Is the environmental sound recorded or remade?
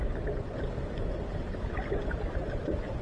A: recorded